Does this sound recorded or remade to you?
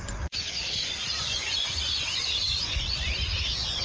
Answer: remade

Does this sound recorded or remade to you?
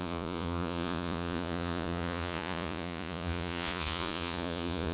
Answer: remade